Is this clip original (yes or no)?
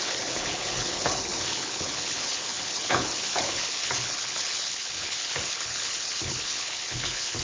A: no